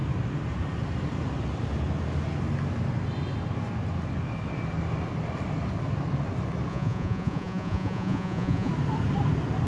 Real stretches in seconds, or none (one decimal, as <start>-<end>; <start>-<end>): 0.0-6.7; 8.7-9.7